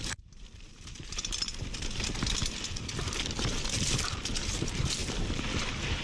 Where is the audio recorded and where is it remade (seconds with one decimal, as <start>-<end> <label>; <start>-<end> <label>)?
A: 0.0-2.4 remade; 2.4-3.6 recorded; 3.6-6.0 remade